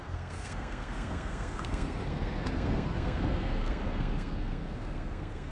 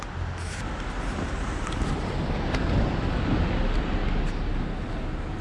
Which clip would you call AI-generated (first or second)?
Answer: first